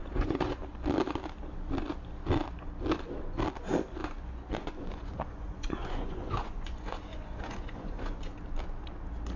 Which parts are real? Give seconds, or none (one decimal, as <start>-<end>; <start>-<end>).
0.6-4.0; 8.4-9.4